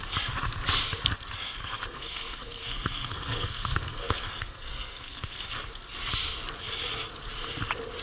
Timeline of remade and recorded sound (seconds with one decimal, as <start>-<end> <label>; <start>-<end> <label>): 0.0-1.6 recorded; 1.6-5.4 remade; 5.4-8.0 recorded